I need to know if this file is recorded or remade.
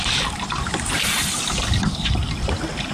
recorded